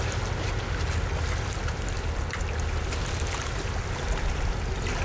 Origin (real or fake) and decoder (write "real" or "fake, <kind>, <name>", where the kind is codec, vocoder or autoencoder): real